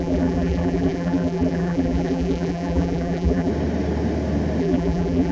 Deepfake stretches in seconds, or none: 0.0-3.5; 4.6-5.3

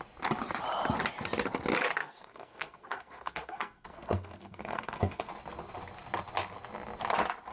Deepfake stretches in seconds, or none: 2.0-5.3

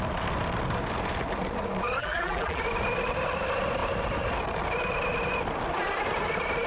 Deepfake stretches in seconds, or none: 2.0-2.6